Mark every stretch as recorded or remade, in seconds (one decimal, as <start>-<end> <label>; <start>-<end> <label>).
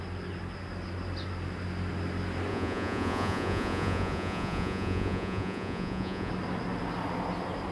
0.0-2.5 recorded; 2.5-6.3 remade; 6.3-7.7 recorded